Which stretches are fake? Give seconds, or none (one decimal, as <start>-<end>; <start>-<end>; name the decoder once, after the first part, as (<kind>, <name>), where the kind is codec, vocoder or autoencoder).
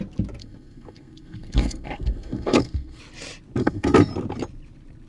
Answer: 0.4-3.0 (codec, SNAC); 3.6-4.1